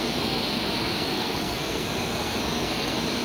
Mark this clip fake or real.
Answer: fake